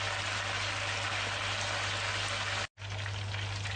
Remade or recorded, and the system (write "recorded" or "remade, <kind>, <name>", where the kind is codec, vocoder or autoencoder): recorded